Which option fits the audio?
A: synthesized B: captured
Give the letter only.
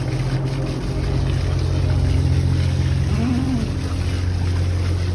B